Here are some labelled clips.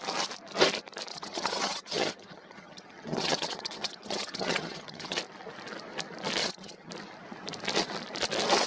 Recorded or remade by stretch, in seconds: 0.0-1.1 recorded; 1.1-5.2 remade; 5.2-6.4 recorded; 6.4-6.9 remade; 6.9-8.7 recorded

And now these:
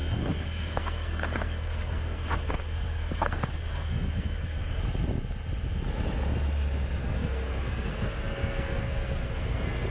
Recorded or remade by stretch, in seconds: 0.0-4.8 remade; 4.8-7.0 recorded; 7.0-9.9 remade

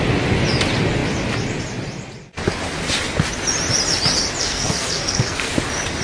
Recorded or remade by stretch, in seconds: 0.0-4.4 recorded; 4.4-5.5 remade; 5.5-6.0 recorded

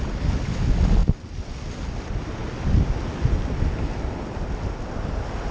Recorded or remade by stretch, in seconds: 0.0-5.5 recorded

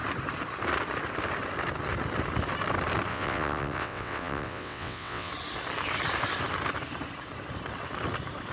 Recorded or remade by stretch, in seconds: 0.0-3.1 recorded; 3.1-5.3 remade; 5.3-8.5 recorded

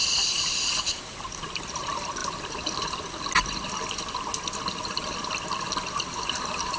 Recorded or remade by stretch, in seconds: 0.0-6.8 recorded

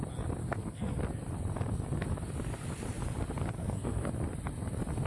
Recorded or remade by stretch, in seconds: 0.0-0.4 recorded; 0.4-1.0 remade; 1.0-3.6 recorded; 3.6-4.1 remade; 4.1-5.1 recorded